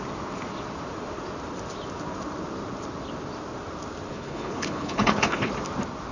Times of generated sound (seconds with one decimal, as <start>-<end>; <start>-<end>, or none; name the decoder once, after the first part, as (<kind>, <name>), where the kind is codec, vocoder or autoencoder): 4.1-5.5 (codec, HILCodec)